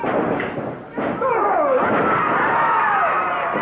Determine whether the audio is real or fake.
real